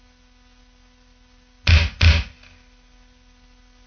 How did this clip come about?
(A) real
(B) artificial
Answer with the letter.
A